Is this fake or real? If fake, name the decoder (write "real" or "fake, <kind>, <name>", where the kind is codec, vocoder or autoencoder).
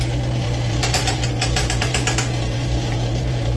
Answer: fake, vocoder, BigVGAN v2